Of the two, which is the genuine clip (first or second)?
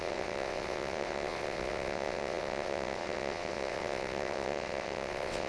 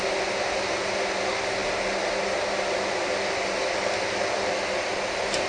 second